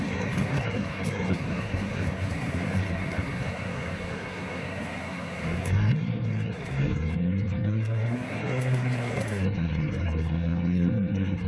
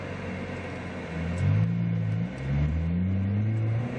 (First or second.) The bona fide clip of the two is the second